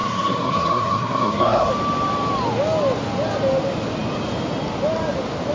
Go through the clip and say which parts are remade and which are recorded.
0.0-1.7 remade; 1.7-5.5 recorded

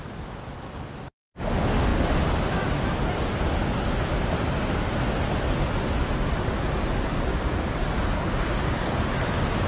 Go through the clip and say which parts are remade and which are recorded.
0.0-7.3 recorded; 7.3-9.1 remade; 9.1-9.7 recorded

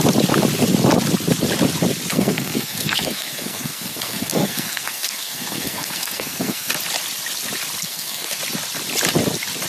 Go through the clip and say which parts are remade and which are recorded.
0.0-2.1 recorded; 2.1-6.7 remade; 6.7-7.8 recorded; 7.8-8.4 remade; 8.4-9.7 recorded

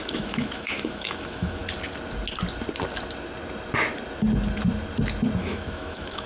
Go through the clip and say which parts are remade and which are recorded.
0.0-1.6 remade; 1.6-5.4 recorded; 5.4-6.3 remade

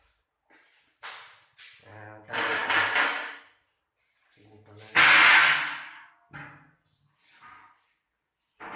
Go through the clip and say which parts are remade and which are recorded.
0.0-8.8 recorded

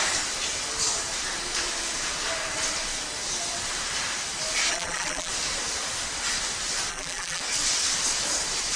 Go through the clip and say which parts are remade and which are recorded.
0.0-4.7 recorded; 4.7-5.3 remade; 5.3-6.9 recorded; 6.9-7.4 remade; 7.4-8.8 recorded

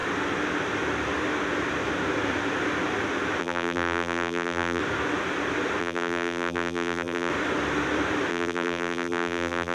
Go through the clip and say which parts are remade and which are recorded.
0.0-3.4 recorded; 3.4-4.8 remade; 4.8-5.8 recorded; 5.8-7.3 remade; 7.3-8.3 recorded; 8.3-9.7 remade